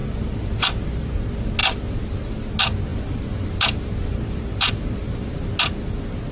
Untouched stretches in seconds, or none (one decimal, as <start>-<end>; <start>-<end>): 1.1-1.6; 2.5-2.9; 5.5-6.3